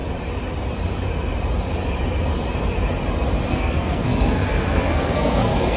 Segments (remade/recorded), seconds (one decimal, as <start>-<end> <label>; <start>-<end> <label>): 0.0-3.5 recorded; 3.5-5.8 remade